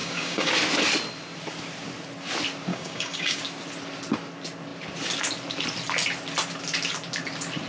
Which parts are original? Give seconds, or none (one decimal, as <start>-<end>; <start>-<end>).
0.5-2.7; 3.4-7.7